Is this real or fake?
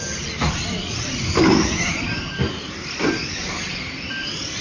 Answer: real